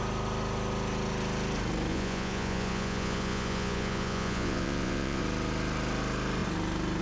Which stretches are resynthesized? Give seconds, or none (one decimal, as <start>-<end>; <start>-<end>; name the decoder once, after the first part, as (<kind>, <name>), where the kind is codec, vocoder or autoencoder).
1.9-5.2 (vocoder, Vocos)